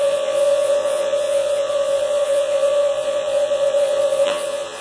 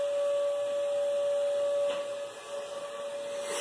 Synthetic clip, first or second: first